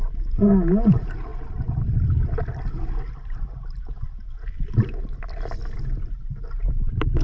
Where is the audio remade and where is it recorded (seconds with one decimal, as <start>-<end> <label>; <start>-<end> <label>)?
0.0-7.2 recorded